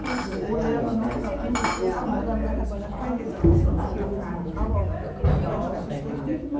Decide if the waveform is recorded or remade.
recorded